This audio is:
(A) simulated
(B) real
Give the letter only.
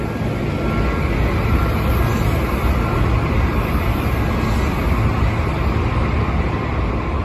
B